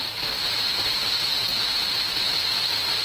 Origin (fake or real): real